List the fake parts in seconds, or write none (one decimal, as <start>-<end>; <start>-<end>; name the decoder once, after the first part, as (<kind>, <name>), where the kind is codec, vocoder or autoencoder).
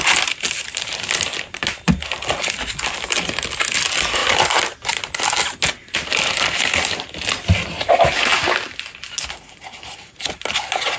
none